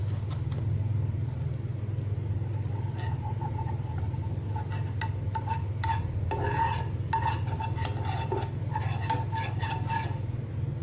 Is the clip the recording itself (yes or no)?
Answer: yes